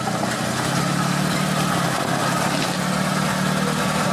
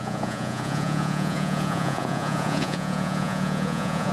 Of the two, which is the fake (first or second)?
second